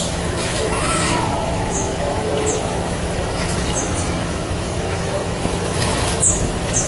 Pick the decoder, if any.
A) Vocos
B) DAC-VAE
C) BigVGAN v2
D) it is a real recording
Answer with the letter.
B